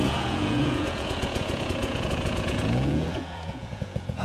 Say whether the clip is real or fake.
fake